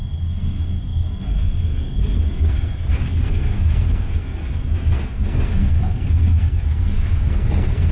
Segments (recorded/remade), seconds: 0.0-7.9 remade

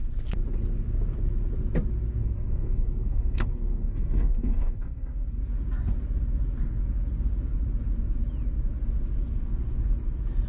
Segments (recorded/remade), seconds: 0.0-2.2 recorded; 2.2-5.4 remade; 5.4-10.5 recorded